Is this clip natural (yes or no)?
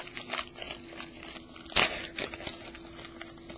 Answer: yes